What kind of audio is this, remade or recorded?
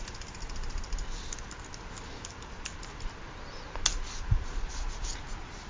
recorded